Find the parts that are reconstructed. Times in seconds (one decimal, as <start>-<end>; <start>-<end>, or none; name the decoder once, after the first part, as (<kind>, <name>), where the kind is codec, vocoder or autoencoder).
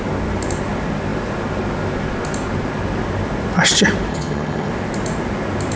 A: 4.1-4.7 (vocoder, HiFi-GAN)